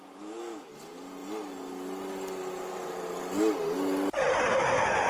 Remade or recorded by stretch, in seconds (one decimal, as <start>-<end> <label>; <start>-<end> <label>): 0.0-0.7 remade; 0.7-5.1 recorded